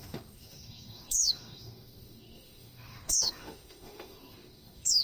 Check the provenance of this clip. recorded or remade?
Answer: remade